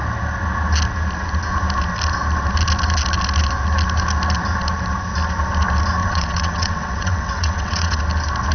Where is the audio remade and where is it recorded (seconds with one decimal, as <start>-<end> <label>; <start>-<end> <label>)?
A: 0.0-6.0 recorded; 6.0-8.0 remade; 8.0-8.5 recorded